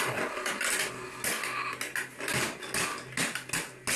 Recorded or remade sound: recorded